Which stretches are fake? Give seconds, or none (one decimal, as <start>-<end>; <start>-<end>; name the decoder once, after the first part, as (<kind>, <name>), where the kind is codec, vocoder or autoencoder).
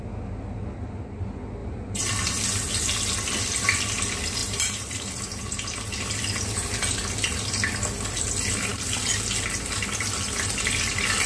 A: 1.6-2.3 (vocoder, BigVGAN v2); 4.4-5.2